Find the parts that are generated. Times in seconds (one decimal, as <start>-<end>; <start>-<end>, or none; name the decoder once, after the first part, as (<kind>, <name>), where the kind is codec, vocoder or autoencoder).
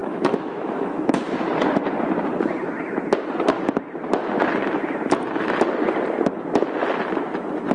0.0-1.2 (autoencoder, DAC-VAE)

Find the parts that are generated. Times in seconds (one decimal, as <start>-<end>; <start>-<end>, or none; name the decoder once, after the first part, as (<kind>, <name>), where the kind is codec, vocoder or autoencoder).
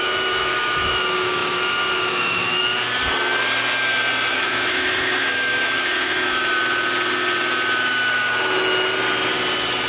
0.0-2.6 (autoencoder, DAC-VAE); 4.3-6.6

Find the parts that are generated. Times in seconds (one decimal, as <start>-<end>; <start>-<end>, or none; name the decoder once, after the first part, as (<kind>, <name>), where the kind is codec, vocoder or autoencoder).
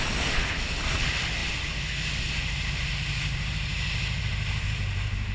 none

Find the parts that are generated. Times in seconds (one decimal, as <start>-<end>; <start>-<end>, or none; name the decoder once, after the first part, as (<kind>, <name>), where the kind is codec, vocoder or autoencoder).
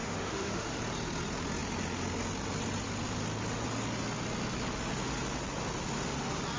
0.0-0.8 (autoencoder, DAC-VAE)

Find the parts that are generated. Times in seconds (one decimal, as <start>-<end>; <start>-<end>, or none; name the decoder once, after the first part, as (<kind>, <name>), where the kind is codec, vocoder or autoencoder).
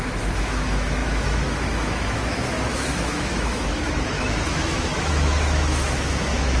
0.0-6.6 (autoencoder, DAC-VAE)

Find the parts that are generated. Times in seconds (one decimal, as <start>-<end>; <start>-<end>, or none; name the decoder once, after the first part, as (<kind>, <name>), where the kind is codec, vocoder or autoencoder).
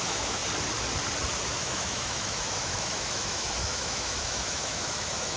0.0-0.4 (autoencoder, DAC-VAE); 1.6-5.4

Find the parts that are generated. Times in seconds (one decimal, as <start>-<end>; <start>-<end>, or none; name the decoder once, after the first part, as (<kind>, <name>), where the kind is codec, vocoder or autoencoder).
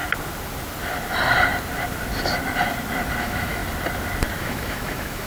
3.2-3.6 (autoencoder, DAC-VAE); 4.4-5.3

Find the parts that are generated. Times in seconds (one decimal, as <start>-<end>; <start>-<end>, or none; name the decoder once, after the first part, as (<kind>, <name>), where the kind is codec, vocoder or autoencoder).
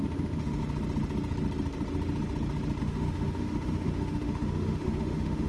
0.0-0.6 (autoencoder, DAC-VAE); 2.8-5.5